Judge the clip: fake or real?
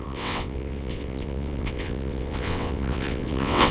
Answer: fake